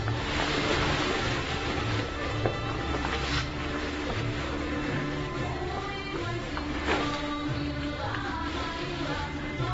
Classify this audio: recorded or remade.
remade